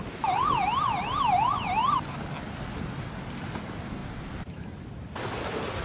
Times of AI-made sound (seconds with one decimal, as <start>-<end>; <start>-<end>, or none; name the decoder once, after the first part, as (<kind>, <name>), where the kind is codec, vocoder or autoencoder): none